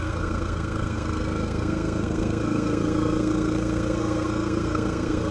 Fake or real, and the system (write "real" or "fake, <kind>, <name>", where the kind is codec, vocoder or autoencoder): fake, codec, SNAC